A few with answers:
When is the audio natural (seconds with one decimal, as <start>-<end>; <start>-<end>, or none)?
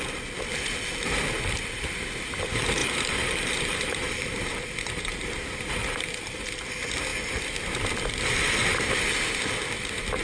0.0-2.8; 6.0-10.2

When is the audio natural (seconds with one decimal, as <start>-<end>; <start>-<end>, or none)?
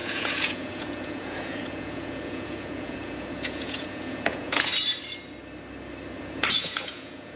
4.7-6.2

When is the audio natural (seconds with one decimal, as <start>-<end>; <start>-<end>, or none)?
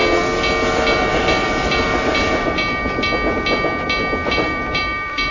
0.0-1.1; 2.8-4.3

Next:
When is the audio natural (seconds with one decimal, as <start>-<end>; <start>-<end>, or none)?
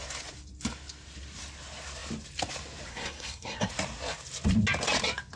0.0-2.9; 3.7-5.4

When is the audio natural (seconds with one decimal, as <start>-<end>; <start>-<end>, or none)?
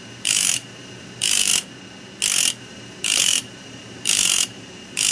1.5-2.6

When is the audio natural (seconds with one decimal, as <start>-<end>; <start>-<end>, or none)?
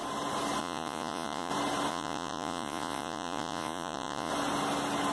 0.0-0.6; 1.5-1.9; 4.3-5.1